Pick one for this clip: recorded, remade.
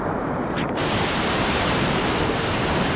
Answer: remade